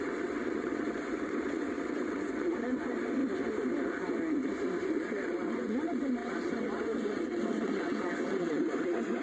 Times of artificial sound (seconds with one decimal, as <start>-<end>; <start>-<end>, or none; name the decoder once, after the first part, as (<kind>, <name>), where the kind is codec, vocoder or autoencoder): 0.0-3.2 (vocoder, WaveNeXt); 4.9-9.2